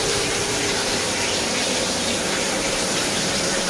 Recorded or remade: remade